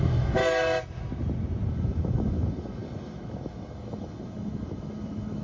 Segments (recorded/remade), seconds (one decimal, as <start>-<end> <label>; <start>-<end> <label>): 0.0-0.4 remade; 0.4-1.7 recorded; 1.7-5.4 remade